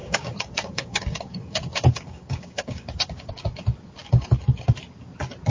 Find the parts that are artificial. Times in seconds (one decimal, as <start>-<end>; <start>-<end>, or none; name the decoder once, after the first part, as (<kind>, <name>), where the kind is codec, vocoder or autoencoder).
0.0-3.3 (codec, DAC)